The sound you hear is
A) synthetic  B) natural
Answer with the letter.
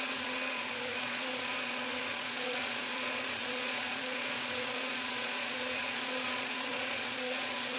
A